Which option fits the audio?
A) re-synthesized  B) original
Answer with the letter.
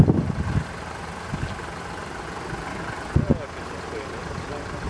B